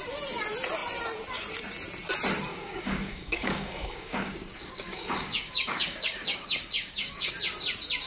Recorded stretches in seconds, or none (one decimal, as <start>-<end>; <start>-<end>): 0.0-2.5; 7.3-8.1

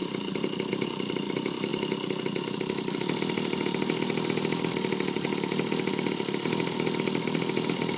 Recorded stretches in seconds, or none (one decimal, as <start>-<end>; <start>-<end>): 0.0-0.7; 1.7-5.9

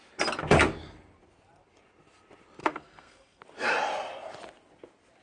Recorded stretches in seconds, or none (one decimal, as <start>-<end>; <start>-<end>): 0.0-2.6; 3.4-5.2